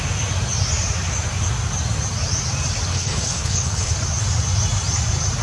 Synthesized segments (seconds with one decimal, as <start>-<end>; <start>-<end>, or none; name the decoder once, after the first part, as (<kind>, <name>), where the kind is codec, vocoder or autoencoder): 2.9-3.9 (codec, HILCodec)